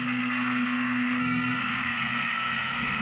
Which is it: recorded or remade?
remade